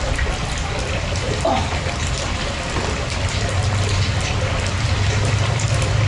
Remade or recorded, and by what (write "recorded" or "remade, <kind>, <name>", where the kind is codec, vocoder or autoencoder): remade, vocoder, BigVGAN v2